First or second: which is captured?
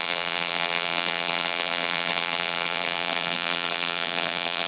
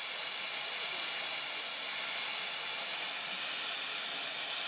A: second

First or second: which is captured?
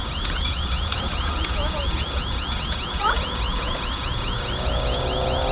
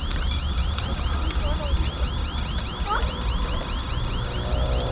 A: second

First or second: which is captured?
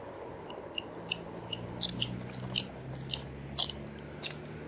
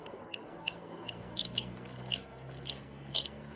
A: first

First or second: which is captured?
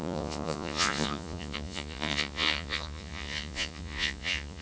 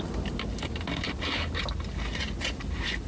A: second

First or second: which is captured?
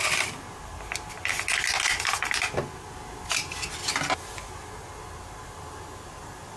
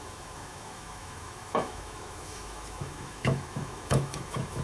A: first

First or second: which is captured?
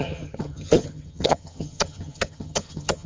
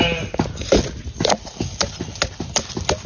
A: second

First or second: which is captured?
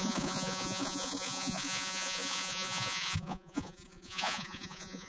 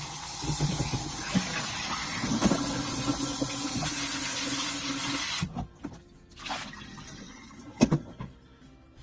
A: second